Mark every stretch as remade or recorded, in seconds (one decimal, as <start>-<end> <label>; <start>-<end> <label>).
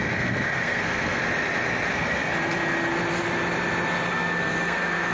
0.0-1.2 remade; 1.2-1.9 recorded; 1.9-2.3 remade; 2.3-4.1 recorded; 4.1-5.1 remade